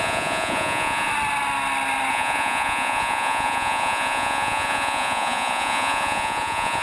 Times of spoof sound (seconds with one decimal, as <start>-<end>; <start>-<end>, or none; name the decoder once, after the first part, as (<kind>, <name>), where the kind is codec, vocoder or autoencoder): 0.0-1.1 (vocoder, Vocos); 2.1-6.8